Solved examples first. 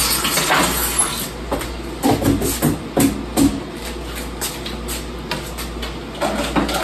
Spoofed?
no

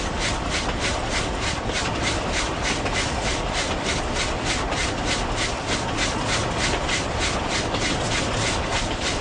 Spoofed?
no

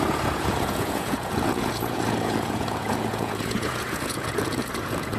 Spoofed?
yes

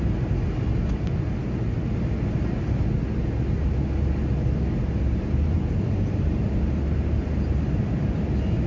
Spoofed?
no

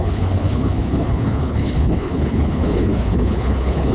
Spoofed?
yes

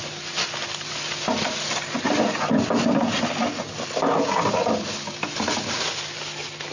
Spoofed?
no